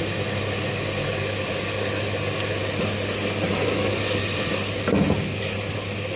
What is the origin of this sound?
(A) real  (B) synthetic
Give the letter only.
A